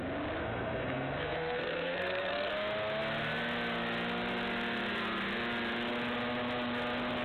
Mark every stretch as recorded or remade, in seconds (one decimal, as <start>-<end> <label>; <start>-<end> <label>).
0.0-0.4 recorded; 0.4-2.5 remade; 2.5-7.2 recorded

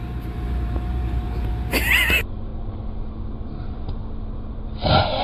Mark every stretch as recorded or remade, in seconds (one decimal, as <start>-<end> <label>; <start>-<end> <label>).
0.0-2.5 remade; 2.5-3.6 recorded; 3.6-4.0 remade; 4.0-5.2 recorded

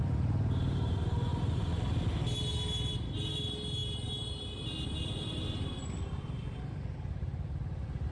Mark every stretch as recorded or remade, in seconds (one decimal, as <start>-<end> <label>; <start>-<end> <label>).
0.0-8.1 recorded

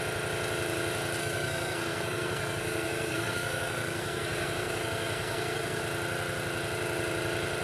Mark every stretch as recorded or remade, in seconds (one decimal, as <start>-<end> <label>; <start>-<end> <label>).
0.0-1.2 recorded; 1.2-5.8 remade; 5.8-7.6 recorded

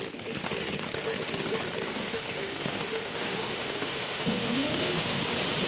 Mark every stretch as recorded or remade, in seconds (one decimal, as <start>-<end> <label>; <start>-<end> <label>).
0.0-2.0 recorded; 2.0-5.2 remade; 5.2-5.7 recorded

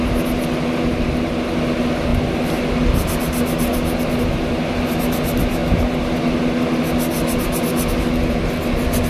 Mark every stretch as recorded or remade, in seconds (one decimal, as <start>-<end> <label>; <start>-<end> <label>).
0.0-9.1 recorded